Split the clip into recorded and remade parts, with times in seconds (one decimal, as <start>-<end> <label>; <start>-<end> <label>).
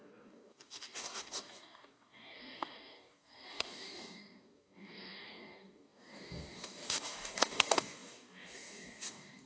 0.0-9.5 remade